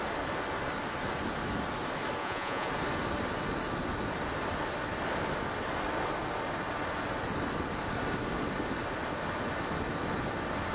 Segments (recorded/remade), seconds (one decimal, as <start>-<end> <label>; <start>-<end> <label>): 0.0-2.2 recorded; 2.2-2.7 remade; 2.7-10.7 recorded